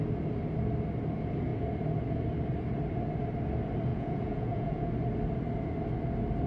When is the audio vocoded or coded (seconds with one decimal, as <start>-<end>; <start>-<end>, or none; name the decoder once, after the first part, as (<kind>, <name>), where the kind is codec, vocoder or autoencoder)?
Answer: 3.9-4.9 (vocoder, Vocos)